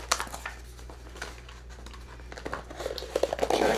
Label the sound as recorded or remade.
recorded